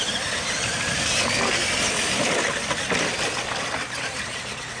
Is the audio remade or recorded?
recorded